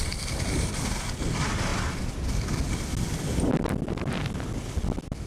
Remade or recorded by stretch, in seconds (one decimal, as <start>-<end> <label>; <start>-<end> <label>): 0.0-5.3 recorded